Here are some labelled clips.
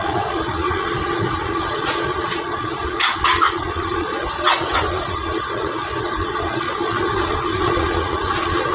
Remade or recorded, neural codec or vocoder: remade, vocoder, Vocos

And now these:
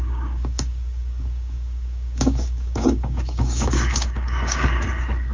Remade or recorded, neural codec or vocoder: remade, codec, DAC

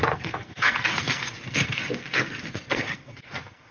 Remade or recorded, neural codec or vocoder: remade, codec, SNAC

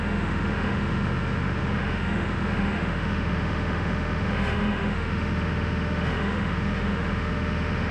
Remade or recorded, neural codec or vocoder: remade, autoencoder, DAC-VAE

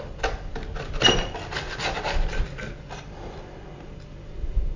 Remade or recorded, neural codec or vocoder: recorded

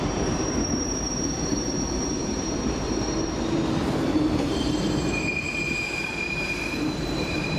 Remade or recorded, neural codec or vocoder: remade, vocoder, BigVGAN v2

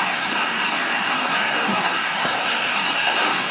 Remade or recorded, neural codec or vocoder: remade, codec, SNAC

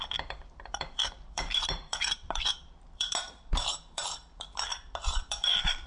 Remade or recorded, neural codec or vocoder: remade, vocoder, BigVGAN v2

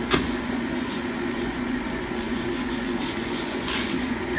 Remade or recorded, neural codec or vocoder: remade, vocoder, Vocos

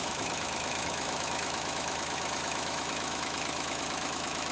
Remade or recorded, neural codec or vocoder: remade, autoencoder, DAC-VAE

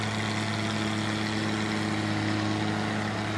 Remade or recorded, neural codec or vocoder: recorded